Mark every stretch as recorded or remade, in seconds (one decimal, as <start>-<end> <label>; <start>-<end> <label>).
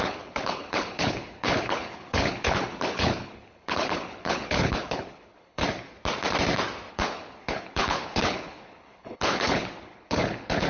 0.0-5.6 remade; 5.6-6.9 recorded; 6.9-10.7 remade